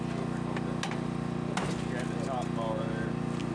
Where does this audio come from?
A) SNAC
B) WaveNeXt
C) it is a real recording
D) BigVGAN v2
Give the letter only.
C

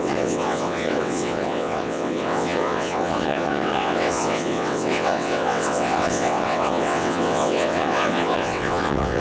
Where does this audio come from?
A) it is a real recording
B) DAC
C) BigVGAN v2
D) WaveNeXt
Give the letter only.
D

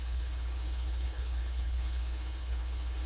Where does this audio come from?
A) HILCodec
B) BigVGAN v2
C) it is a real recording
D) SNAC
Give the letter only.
A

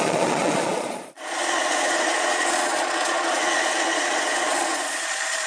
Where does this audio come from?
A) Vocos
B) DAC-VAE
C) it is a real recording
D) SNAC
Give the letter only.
A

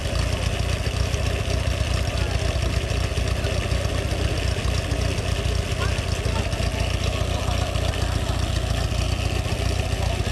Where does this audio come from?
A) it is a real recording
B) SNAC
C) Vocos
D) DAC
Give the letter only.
A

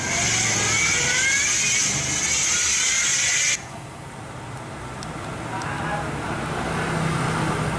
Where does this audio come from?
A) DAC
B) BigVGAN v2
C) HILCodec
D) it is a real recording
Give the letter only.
D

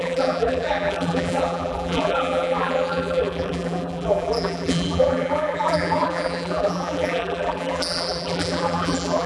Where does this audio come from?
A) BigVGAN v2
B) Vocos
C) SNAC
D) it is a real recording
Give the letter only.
A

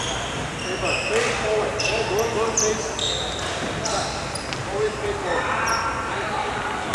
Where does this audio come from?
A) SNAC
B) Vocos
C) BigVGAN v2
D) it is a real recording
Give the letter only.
D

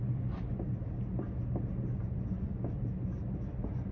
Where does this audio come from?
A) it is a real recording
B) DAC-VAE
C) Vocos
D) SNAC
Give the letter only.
A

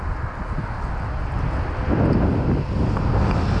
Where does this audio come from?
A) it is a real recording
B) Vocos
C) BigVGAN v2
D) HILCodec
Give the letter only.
A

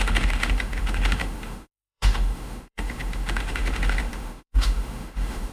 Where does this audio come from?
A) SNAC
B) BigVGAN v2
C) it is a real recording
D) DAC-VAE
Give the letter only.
D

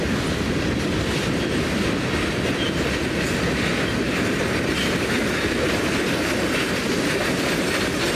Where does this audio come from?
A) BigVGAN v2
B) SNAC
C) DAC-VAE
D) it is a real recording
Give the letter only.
D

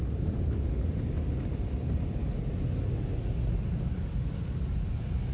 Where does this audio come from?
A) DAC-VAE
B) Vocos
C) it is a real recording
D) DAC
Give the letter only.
C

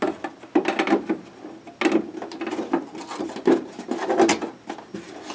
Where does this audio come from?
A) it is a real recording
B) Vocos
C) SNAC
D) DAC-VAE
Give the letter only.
A